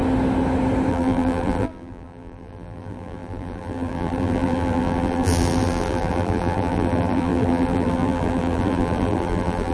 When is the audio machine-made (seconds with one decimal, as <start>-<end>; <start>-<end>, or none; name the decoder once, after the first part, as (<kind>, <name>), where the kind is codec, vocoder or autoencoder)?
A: 0.9-9.7 (vocoder, BigVGAN v2)